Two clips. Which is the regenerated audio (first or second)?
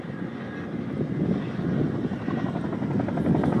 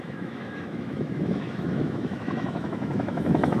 second